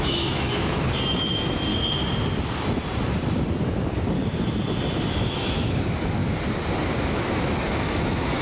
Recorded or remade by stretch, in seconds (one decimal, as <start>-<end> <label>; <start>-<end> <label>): 0.0-1.7 remade; 1.7-5.1 recorded; 5.1-6.2 remade; 6.2-7.0 recorded; 7.0-8.4 remade